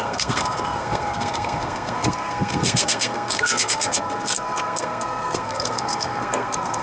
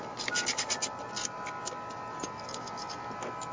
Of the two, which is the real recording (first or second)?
second